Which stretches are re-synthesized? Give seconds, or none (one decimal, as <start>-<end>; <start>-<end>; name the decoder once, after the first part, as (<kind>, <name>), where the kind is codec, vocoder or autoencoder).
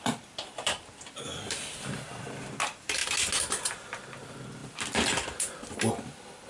0.0-3.0 (vocoder, BigVGAN v2); 3.5-6.5